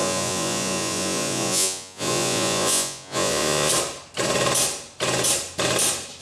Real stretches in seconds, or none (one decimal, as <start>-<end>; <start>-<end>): 3.7-6.2